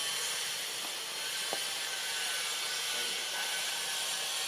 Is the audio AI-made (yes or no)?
no